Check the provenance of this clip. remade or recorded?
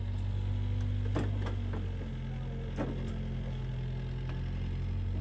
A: recorded